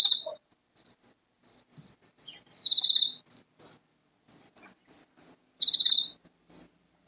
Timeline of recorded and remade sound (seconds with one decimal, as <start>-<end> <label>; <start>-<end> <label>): 0.0-7.1 recorded